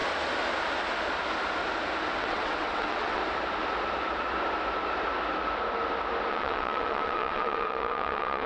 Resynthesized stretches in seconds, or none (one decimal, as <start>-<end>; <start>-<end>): 2.2-3.2; 6.3-8.5